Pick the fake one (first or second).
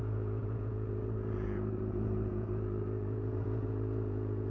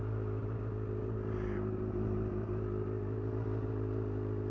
first